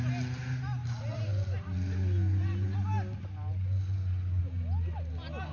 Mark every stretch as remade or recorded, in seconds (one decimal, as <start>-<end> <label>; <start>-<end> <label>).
0.0-5.5 recorded